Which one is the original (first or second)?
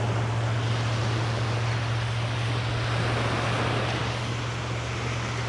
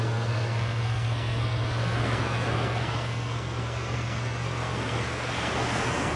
first